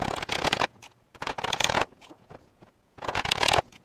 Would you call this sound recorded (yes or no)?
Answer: no